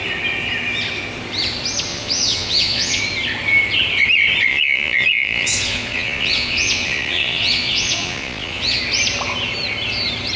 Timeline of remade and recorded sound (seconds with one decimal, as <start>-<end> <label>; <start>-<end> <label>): 0.0-1.9 recorded; 1.9-3.0 remade; 3.0-4.5 recorded; 4.5-8.8 remade; 8.8-10.4 recorded